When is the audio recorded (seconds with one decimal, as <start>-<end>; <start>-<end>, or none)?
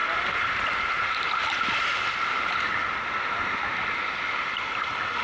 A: 0.0-5.2